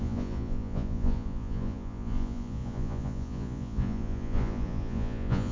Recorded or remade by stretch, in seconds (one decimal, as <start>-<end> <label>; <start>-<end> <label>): 0.0-5.5 remade